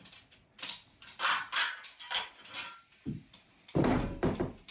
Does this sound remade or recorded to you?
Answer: remade